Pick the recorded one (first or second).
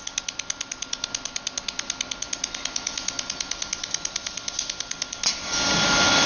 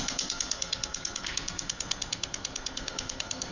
first